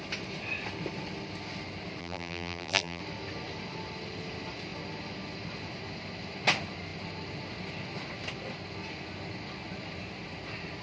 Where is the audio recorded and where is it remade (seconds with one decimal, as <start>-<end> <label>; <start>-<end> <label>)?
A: 0.0-2.0 recorded; 2.0-3.0 remade; 3.0-10.8 recorded